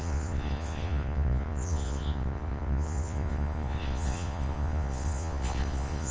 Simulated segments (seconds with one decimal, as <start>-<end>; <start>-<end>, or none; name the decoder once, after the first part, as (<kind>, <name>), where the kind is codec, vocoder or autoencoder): 0.0-6.1 (vocoder, Vocos)